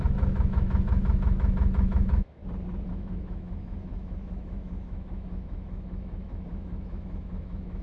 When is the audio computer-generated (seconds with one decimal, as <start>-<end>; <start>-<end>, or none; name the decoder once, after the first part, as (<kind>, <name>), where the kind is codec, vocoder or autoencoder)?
0.0-2.4 (autoencoder, DAC-VAE); 2.9-7.8